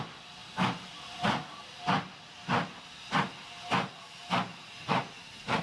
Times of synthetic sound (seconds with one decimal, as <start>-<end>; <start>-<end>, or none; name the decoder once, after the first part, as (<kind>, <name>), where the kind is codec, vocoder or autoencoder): 4.2-5.6 (vocoder, BigVGAN v2)